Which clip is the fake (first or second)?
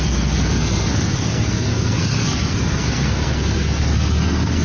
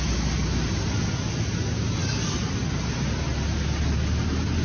first